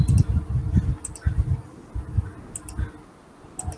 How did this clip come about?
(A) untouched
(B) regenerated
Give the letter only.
A